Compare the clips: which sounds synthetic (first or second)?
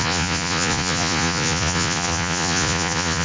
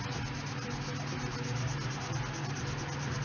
first